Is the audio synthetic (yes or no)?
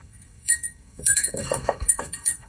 yes